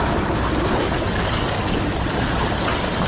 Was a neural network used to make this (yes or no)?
no